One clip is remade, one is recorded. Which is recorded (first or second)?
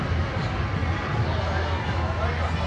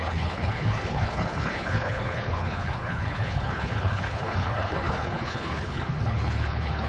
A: first